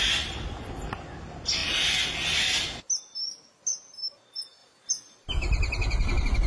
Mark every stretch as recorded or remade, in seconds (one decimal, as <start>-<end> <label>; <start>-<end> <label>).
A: 0.0-6.5 recorded